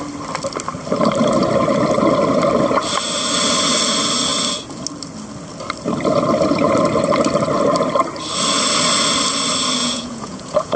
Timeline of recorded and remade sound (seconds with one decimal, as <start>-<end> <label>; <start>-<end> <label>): 0.0-9.8 recorded; 9.8-10.8 remade